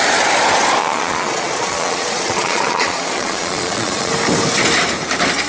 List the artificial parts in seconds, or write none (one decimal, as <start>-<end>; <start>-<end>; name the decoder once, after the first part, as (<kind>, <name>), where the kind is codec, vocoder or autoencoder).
0.8-4.1 (vocoder, Vocos)